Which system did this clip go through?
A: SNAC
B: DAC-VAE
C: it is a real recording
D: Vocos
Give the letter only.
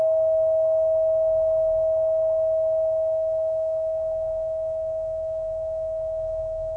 B